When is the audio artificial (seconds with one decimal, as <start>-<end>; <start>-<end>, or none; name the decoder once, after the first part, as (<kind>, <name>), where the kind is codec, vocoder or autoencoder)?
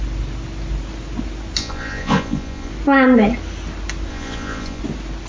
1.6-2.7 (vocoder, Vocos); 4.1-4.8